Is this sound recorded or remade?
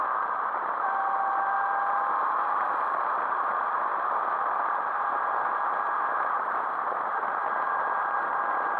recorded